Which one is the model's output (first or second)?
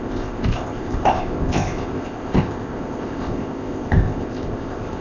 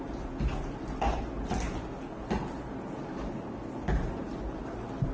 first